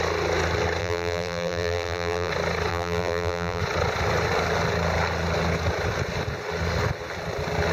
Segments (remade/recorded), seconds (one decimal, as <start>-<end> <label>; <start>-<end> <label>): 0.0-0.8 recorded; 0.8-2.3 remade; 2.3-2.7 recorded; 2.7-3.6 remade; 3.6-7.7 recorded